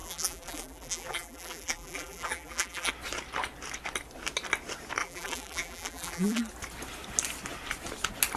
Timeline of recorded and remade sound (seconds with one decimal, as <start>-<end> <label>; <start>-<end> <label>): 0.0-2.9 remade; 2.9-5.0 recorded; 5.0-6.5 remade; 6.5-8.4 recorded